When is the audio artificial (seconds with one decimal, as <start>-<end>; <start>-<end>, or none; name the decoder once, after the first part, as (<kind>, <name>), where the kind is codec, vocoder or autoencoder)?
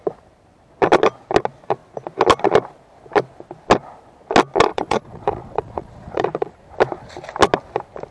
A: 4.7-6.6 (vocoder, Vocos)